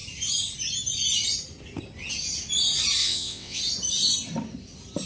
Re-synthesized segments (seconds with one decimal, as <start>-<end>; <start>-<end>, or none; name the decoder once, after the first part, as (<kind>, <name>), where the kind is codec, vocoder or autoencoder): 3.0-3.6 (vocoder, WaveNeXt)